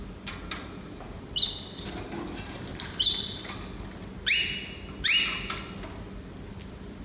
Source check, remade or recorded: recorded